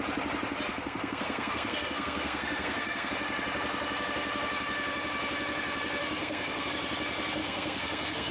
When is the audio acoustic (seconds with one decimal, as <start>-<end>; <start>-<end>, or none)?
0.0-0.7; 3.1-6.2; 6.7-7.4